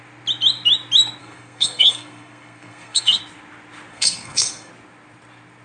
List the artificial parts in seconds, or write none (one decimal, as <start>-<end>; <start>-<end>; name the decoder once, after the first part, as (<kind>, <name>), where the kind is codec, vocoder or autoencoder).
1.2-3.2 (codec, SNAC); 3.9-4.7